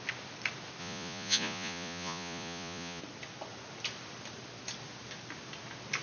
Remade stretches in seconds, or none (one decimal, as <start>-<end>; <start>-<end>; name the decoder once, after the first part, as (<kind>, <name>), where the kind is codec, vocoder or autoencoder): 0.8-3.0 (vocoder, Vocos)